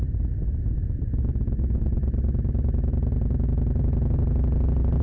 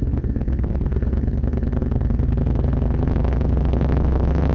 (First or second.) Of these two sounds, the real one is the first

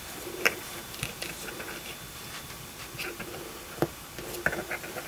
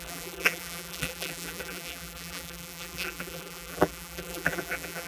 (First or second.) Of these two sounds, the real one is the first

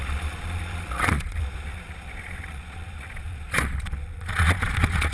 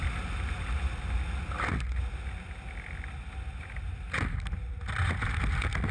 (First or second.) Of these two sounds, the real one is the second